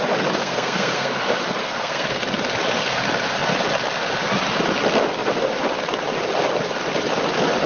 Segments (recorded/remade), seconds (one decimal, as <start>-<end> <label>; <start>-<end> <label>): 0.0-0.4 recorded; 0.4-1.2 remade; 1.2-1.6 recorded; 1.6-2.2 remade; 2.2-7.7 recorded